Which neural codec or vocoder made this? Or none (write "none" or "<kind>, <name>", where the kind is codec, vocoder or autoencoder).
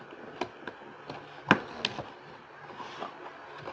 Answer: none